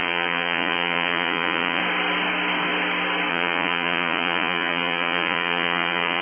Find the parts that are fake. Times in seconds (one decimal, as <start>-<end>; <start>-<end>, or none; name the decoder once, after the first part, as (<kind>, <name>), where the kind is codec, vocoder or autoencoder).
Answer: 0.0-1.8 (vocoder, Vocos); 3.3-6.2